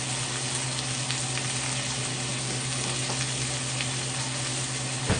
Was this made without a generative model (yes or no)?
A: yes